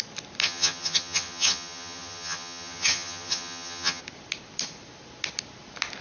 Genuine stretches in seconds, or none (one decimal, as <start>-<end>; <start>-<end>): 0.0-0.4; 4.0-6.0